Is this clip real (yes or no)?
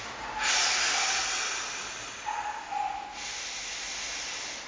yes